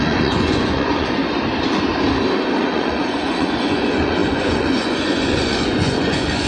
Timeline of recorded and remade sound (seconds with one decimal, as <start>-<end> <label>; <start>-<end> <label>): 0.0-1.2 remade; 1.2-2.6 recorded; 2.6-6.5 remade